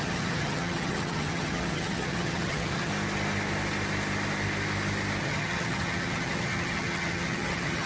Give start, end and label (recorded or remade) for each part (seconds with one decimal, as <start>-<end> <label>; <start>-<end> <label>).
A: 0.0-2.9 remade; 2.9-5.2 recorded; 5.2-7.9 remade